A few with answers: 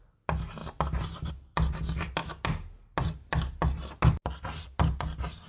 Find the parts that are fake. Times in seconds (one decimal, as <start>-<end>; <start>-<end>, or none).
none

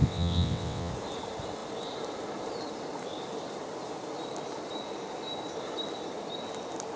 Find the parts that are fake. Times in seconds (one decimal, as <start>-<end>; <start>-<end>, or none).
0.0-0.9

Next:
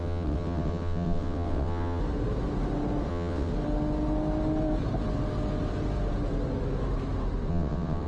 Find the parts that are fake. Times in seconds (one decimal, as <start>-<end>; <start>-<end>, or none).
0.0-2.0; 3.1-3.5; 7.5-8.1